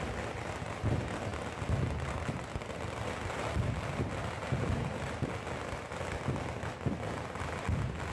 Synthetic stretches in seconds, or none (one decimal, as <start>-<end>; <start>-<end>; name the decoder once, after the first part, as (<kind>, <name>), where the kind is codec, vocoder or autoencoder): none